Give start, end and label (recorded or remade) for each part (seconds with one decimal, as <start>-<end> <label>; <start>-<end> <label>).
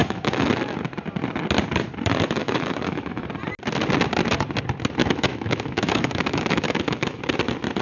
0.0-0.5 remade; 0.5-2.4 recorded; 2.4-3.2 remade; 3.2-5.0 recorded; 5.0-7.2 remade; 7.2-7.8 recorded